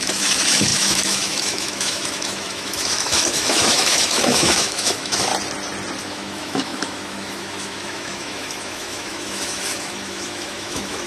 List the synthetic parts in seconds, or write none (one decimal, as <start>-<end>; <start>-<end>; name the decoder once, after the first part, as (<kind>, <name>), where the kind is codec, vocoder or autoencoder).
0.0-5.3 (autoencoder, DAC-VAE); 6.0-11.1